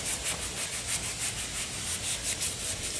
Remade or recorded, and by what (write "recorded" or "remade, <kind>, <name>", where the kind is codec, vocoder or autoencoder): recorded